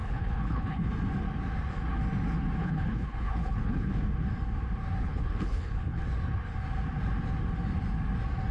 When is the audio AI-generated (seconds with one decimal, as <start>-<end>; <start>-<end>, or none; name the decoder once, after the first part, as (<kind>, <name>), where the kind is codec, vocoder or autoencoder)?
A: 0.0-0.9 (codec, HILCodec); 2.6-3.9; 5.0-6.0